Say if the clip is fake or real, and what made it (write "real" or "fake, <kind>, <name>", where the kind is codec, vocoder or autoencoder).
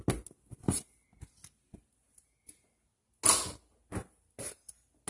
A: real